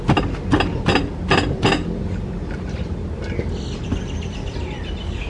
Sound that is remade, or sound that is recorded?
recorded